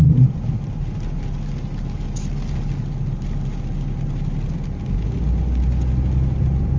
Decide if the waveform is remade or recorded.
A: recorded